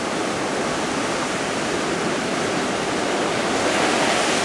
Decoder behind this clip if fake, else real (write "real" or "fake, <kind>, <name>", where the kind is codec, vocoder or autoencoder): real